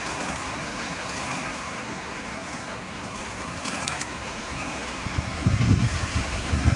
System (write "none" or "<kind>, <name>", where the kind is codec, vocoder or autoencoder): codec, SNAC